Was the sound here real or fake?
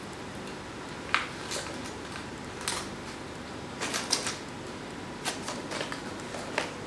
real